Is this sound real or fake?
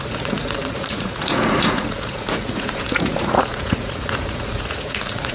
fake